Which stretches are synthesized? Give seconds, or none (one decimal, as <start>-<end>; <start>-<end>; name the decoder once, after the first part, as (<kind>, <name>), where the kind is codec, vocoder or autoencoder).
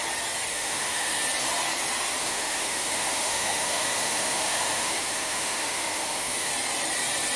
0.5-1.2 (autoencoder, DAC-VAE); 2.2-6.5